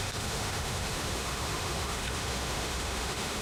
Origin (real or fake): fake